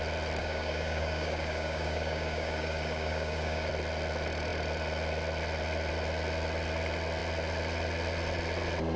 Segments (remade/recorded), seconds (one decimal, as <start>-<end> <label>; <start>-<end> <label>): 0.0-0.4 recorded; 0.4-3.7 remade; 3.7-9.0 recorded